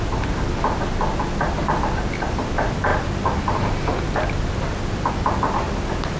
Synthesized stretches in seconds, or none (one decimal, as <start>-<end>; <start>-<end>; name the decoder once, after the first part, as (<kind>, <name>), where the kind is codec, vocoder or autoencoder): none